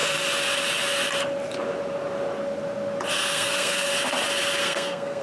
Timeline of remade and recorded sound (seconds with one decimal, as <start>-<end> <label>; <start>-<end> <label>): 0.0-3.1 recorded; 3.1-3.9 remade; 3.9-4.6 recorded; 4.6-5.2 remade